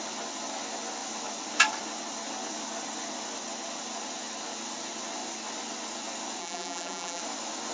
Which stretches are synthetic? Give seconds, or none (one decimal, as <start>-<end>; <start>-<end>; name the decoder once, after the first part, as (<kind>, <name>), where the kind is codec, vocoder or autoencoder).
6.4-7.2 (vocoder, BigVGAN v2)